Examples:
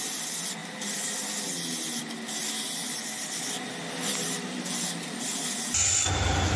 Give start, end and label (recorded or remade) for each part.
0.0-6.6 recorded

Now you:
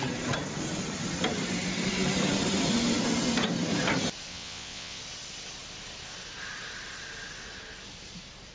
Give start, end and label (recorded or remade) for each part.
0.0-4.3 recorded; 4.3-5.0 remade; 5.0-8.5 recorded

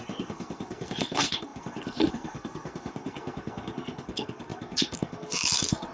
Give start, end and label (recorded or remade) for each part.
0.0-5.9 remade

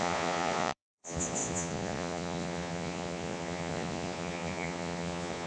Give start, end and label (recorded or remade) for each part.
0.0-5.5 remade

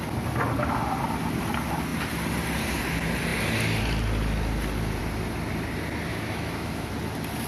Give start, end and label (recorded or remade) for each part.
0.0-6.1 recorded; 6.1-6.9 remade; 6.9-7.5 recorded

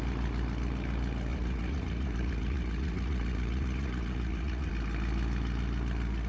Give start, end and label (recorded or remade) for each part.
0.0-1.3 recorded; 1.3-4.7 remade; 4.7-6.3 recorded

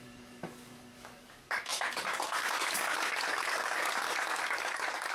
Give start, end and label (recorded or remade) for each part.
0.0-5.1 remade

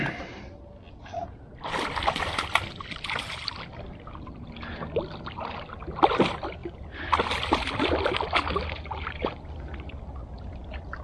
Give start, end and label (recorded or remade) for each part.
0.0-11.0 recorded